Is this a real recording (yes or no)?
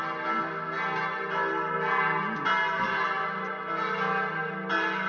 yes